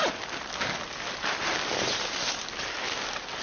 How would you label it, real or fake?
real